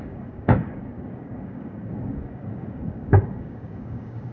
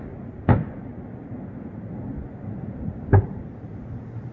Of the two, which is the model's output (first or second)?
first